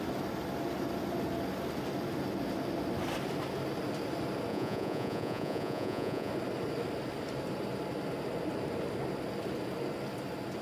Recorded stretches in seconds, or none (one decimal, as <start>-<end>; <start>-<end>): 0.0-4.5; 6.3-10.6

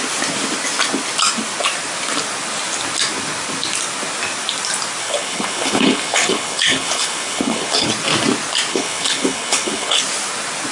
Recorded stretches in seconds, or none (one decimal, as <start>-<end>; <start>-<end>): 0.0-5.0; 7.9-8.7; 10.0-10.7

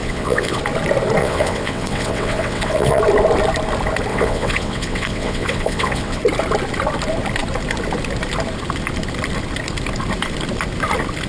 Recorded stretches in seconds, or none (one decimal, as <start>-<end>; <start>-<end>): 0.6-1.2; 3.0-4.1; 6.2-11.3

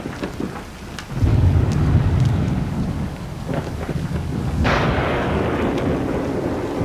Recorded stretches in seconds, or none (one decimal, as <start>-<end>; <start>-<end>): 0.0-1.3; 5.4-6.8

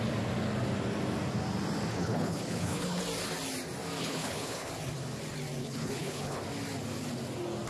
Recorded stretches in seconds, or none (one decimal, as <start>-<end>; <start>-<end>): 0.0-1.9; 3.0-4.0; 4.7-5.6; 6.4-7.7

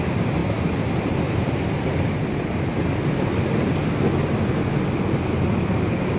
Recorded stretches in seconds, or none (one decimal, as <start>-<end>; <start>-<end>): 0.0-6.2